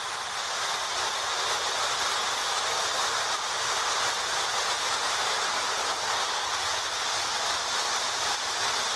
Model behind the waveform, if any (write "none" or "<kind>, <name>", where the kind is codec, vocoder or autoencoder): none